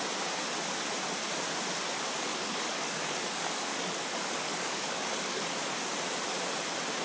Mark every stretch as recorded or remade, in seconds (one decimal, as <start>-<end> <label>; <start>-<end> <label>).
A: 0.0-2.3 recorded; 2.3-5.5 remade; 5.5-7.0 recorded